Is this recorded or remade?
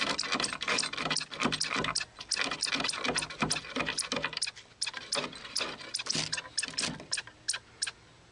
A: recorded